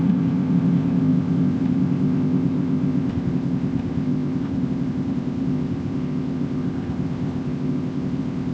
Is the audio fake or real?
fake